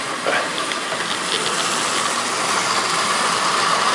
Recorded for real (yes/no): yes